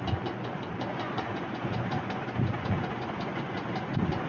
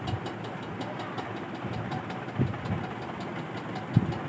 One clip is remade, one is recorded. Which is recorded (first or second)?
second